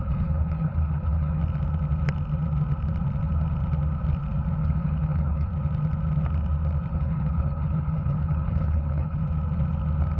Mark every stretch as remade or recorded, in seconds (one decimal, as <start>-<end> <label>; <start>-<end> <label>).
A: 0.0-1.4 remade; 1.4-4.6 recorded; 4.6-5.5 remade; 5.5-6.9 recorded; 6.9-9.2 remade; 9.2-10.2 recorded